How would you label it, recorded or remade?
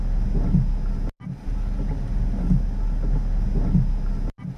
recorded